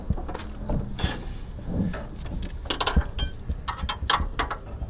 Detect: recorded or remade recorded